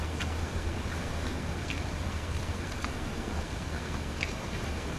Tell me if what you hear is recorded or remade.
remade